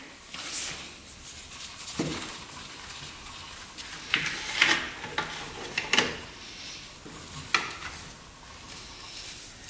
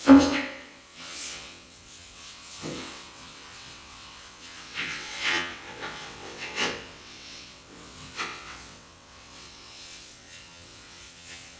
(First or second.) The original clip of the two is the first